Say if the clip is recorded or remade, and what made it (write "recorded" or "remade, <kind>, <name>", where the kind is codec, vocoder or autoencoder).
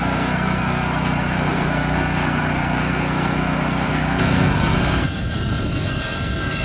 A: remade, codec, SNAC